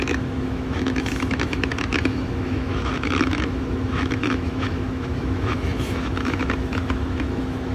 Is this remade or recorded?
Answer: remade